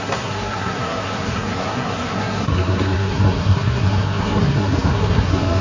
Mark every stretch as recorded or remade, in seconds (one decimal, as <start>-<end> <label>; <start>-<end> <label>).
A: 0.0-5.6 remade